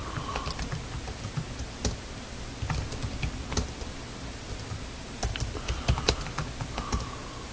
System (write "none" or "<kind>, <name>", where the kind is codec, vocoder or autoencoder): none